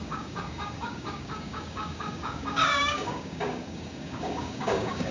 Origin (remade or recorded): remade